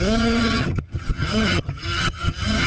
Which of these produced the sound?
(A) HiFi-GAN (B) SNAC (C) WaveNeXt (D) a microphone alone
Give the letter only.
A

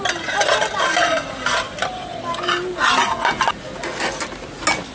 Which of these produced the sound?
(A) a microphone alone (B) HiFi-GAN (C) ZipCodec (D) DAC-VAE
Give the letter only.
A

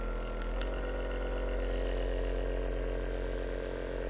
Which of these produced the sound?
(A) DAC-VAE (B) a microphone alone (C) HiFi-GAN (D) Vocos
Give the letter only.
B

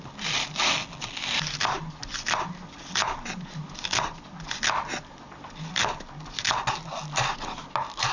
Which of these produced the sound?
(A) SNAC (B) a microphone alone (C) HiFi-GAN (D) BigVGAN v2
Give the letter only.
B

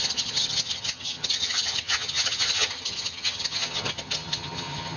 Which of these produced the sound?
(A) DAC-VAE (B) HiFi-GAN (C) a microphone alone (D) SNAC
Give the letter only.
B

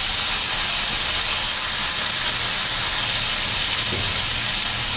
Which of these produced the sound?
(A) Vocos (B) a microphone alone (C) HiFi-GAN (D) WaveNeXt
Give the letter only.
B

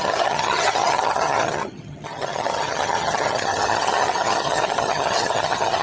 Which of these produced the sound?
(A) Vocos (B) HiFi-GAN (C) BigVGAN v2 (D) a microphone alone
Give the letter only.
B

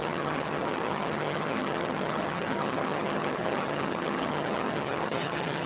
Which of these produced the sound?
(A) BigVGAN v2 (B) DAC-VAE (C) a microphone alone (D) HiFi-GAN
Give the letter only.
D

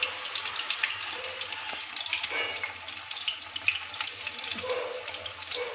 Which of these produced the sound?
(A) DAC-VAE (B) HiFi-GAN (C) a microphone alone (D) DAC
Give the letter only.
C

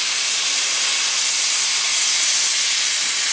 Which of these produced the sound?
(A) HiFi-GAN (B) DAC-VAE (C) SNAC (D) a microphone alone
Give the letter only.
D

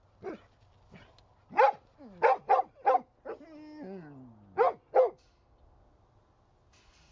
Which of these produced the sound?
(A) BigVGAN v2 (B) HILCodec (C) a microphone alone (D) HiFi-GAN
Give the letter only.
C